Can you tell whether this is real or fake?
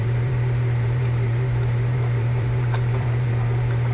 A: fake